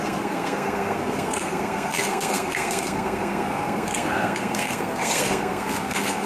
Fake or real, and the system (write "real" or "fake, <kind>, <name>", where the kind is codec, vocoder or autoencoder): fake, codec, SNAC